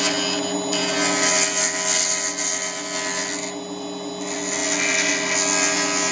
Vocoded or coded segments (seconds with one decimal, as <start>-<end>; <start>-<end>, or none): none